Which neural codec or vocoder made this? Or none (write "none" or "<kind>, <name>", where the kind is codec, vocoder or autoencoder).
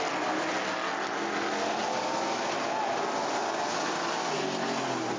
none